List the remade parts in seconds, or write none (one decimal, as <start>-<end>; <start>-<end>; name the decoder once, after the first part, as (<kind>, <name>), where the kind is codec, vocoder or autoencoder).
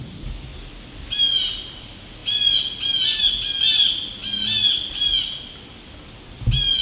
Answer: none